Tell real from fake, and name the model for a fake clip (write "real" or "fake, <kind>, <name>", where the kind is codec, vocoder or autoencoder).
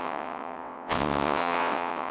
fake, vocoder, WaveNeXt